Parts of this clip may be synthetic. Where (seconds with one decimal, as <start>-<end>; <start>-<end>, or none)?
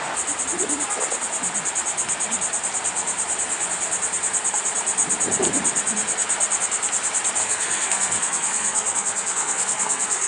7.4-10.3